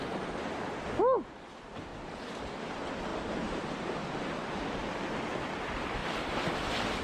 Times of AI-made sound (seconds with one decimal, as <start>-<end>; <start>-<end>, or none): none